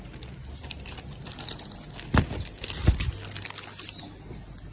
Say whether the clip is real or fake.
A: real